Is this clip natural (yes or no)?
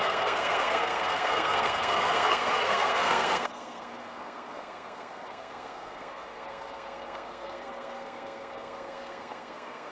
no